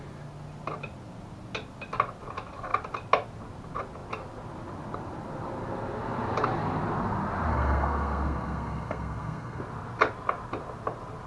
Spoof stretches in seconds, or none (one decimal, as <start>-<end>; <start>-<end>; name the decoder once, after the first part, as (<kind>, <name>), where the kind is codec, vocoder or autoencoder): 7.5-9.6 (codec, SNAC)